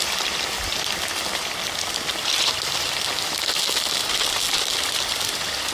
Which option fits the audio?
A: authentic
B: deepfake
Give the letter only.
A